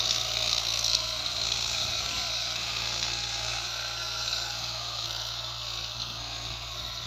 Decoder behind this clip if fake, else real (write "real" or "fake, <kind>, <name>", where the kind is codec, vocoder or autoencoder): fake, codec, SNAC